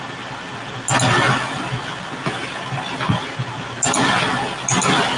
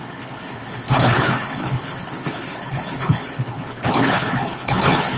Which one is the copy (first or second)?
second